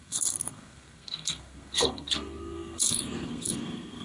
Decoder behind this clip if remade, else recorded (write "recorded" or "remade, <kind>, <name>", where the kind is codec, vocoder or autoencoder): remade, codec, SNAC